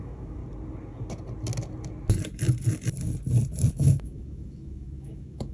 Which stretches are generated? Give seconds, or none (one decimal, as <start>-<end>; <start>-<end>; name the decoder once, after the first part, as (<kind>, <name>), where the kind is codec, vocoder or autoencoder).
0.0-0.4 (autoencoder, DAC-VAE); 3.7-5.5